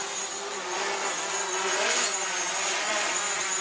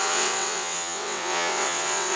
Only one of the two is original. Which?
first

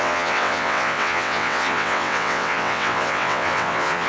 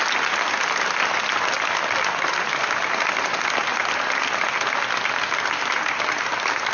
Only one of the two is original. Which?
second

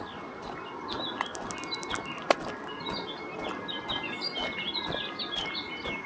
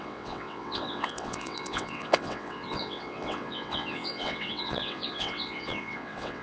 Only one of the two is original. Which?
first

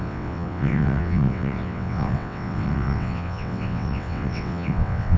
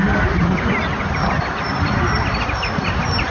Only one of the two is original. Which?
second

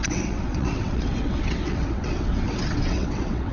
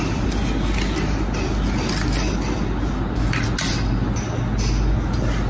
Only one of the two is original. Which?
second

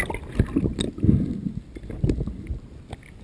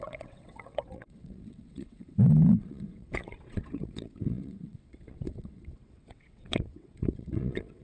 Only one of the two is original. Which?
first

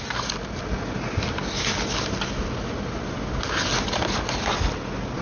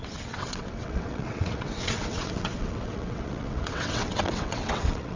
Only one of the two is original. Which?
first